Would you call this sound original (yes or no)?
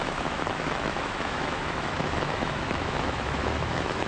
no